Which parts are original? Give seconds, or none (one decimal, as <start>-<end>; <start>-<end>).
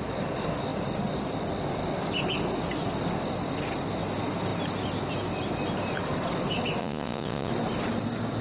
0.0-6.8; 7.5-8.4